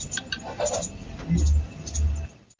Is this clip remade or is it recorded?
recorded